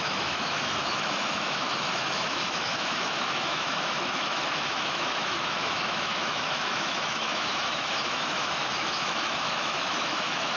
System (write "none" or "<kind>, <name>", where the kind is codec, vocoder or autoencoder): autoencoder, DAC-VAE